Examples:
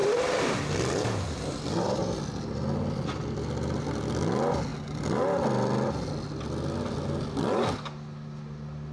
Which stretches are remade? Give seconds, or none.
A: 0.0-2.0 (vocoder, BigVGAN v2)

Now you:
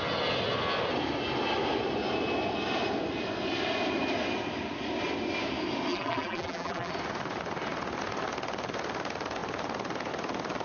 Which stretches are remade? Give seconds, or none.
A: 5.9-6.9 (vocoder, BigVGAN v2)

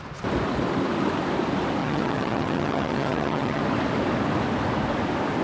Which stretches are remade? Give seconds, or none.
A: 1.8-3.6 (vocoder, HiFi-GAN)

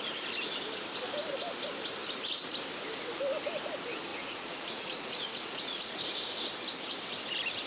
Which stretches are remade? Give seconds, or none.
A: 4.1-6.0 (vocoder, Vocos)

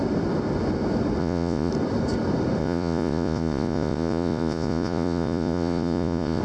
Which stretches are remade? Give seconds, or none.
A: 1.2-1.7 (vocoder, Vocos); 2.6-6.4

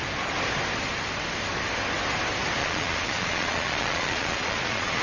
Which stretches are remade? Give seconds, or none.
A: 2.6-5.0 (vocoder, Vocos)